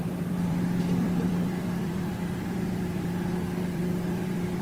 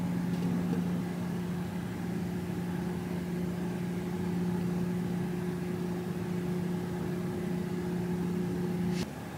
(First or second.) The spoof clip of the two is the first